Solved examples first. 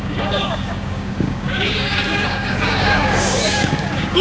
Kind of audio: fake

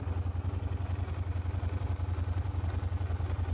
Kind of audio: real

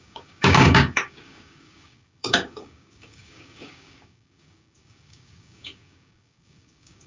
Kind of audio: fake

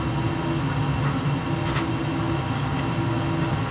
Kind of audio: real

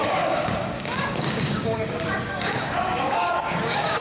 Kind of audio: fake